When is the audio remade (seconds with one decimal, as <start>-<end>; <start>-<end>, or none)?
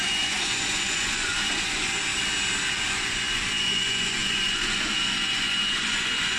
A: 0.0-2.1; 2.8-6.4